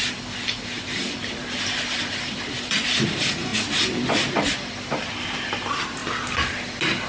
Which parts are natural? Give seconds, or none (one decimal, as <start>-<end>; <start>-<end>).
6.0-7.1